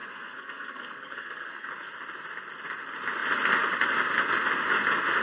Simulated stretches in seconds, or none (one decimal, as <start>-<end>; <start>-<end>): 0.0-1.7